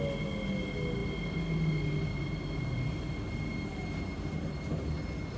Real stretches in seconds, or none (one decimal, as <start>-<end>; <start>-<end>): 0.0-5.4